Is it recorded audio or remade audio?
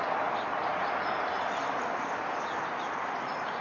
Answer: recorded